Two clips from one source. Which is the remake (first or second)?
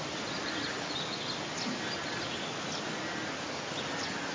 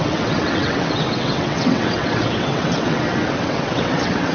second